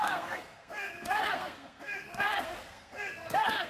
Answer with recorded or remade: remade